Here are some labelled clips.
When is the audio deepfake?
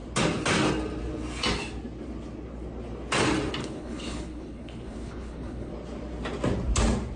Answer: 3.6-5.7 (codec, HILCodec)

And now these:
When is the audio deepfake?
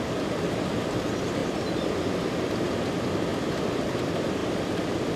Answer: none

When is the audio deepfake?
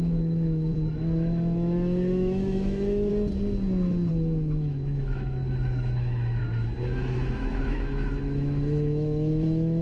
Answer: 0.0-3.1 (autoencoder, DAC-VAE); 4.1-6.4; 7.0-9.8